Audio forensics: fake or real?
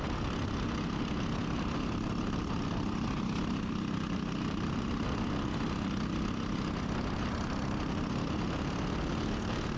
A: real